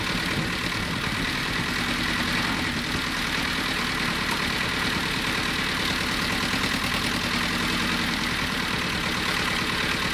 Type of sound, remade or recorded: recorded